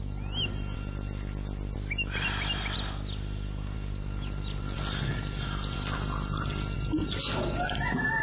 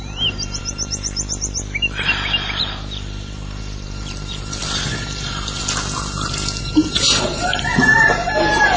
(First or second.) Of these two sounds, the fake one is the second